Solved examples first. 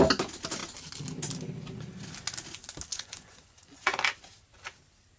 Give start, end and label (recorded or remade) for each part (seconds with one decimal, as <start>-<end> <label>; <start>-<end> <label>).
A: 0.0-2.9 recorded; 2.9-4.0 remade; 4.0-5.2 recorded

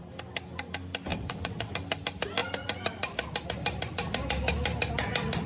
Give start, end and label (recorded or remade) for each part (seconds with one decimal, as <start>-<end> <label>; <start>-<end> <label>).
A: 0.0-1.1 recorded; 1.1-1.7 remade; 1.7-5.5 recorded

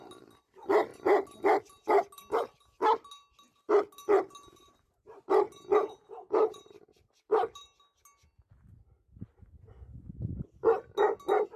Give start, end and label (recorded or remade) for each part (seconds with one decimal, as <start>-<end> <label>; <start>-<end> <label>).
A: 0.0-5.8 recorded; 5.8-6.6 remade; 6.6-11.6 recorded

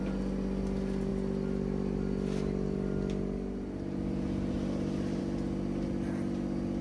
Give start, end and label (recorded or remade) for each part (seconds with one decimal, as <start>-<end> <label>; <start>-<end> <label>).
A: 0.0-6.8 recorded

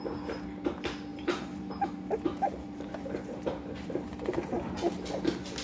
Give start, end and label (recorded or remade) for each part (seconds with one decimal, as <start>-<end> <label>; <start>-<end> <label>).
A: 0.0-1.1 recorded; 1.1-4.5 remade; 4.5-5.6 recorded

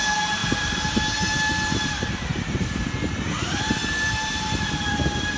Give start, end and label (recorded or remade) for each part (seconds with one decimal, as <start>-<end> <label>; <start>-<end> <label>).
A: 0.0-0.4 remade; 0.4-1.0 recorded; 1.0-3.8 remade; 3.8-4.3 recorded; 4.3-5.4 remade